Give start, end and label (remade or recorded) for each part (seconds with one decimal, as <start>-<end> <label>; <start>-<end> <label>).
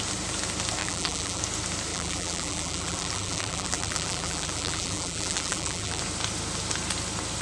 0.0-0.8 recorded; 0.8-1.4 remade; 1.4-1.9 recorded; 1.9-6.0 remade; 6.0-7.4 recorded